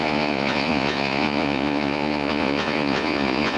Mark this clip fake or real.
fake